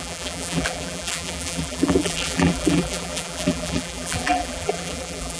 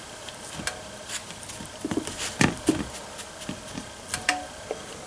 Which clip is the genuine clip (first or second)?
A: second